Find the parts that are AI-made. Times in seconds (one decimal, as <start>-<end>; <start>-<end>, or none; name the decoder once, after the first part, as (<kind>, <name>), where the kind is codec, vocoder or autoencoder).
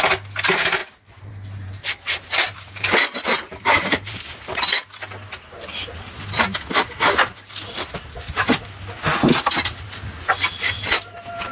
0.8-4.4 (vocoder, BigVGAN v2)